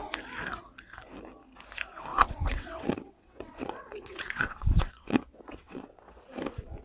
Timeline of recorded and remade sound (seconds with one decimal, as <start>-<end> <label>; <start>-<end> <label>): 0.0-2.1 recorded; 2.1-6.2 remade; 6.2-6.8 recorded